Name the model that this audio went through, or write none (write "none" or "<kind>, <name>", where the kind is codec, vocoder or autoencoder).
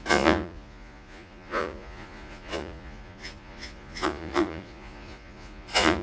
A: vocoder, Vocos